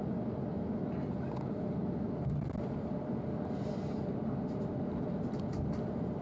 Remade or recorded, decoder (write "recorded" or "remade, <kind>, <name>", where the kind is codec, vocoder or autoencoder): recorded